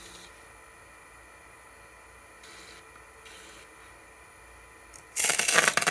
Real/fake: real